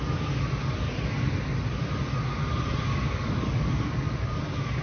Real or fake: real